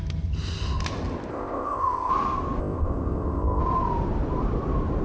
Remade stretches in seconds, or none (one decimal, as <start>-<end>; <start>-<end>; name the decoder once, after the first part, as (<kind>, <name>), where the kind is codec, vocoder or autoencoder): 1.3-2.1 (codec, ZipCodec); 2.6-3.6